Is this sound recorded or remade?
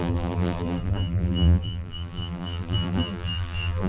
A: remade